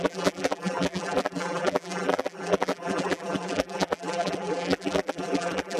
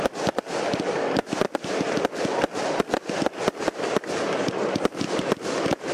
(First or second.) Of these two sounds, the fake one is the first